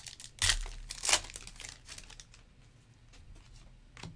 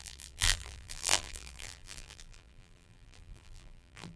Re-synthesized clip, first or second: second